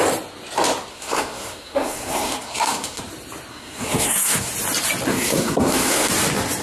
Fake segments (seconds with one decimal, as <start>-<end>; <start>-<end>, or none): 0.9-3.0; 3.5-4.5; 5.1-6.1